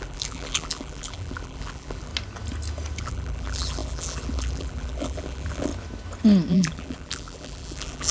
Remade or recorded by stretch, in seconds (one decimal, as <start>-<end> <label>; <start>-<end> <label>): 0.0-2.1 remade; 2.1-3.0 recorded; 3.0-5.7 remade; 5.7-6.5 recorded; 6.5-8.1 remade